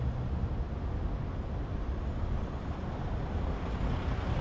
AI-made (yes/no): no